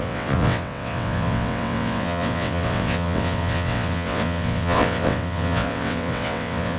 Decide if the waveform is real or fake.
fake